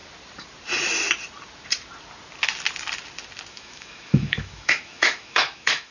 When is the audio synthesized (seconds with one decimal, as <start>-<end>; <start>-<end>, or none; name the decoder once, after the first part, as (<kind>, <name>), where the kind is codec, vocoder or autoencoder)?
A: 3.5-5.9 (autoencoder, DAC-VAE)